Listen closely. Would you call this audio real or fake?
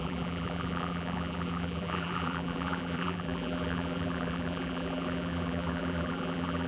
fake